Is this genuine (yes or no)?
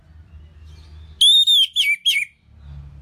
yes